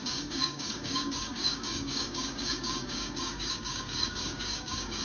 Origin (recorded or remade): remade